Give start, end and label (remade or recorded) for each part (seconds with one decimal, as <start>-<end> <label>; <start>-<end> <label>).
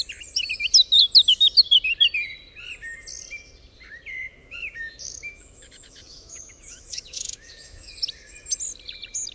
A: 0.0-4.4 recorded; 4.4-7.9 remade; 7.9-9.3 recorded